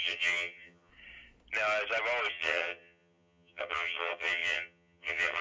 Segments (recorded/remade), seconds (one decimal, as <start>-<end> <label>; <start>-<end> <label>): 0.0-0.9 remade; 0.9-2.3 recorded; 2.3-5.4 remade